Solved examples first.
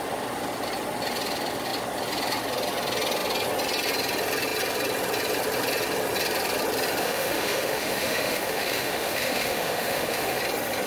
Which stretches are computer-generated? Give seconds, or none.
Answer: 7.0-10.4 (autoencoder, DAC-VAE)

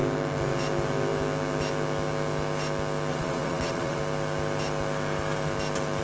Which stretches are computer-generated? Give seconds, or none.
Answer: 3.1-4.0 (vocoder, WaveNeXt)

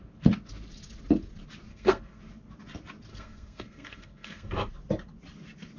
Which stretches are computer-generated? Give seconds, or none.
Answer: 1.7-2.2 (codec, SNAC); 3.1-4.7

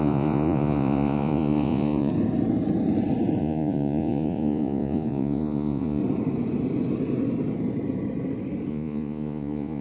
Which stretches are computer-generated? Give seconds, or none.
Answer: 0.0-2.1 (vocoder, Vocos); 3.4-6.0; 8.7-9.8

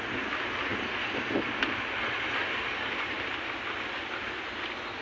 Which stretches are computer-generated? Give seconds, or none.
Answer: none

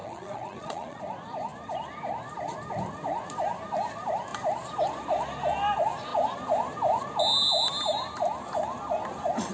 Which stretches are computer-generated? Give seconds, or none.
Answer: 0.0-1.0 (vocoder, Vocos)

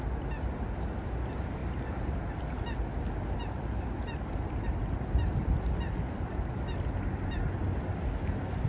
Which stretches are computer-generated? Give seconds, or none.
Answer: none